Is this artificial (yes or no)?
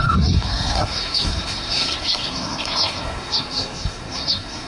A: yes